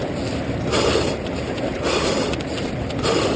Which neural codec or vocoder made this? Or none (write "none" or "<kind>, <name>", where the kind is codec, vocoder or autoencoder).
none